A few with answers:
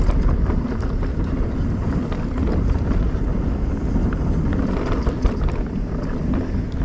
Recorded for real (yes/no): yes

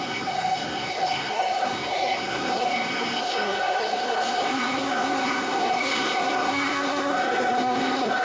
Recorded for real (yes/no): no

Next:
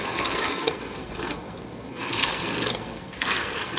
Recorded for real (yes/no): no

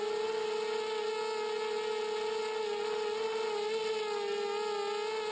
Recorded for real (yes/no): yes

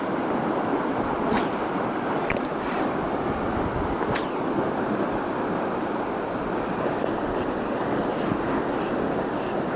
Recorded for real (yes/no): yes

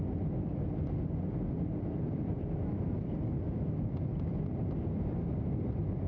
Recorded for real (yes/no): yes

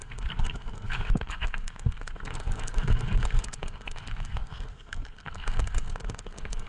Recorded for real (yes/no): no